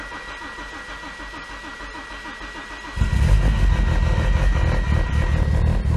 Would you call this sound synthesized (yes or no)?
no